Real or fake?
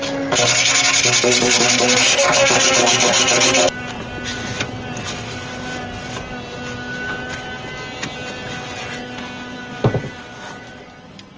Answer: real